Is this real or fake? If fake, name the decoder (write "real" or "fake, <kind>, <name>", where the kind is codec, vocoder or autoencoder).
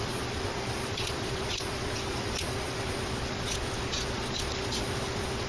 fake, vocoder, Vocos